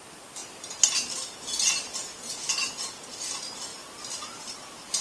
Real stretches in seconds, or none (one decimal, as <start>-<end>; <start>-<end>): 0.0-5.0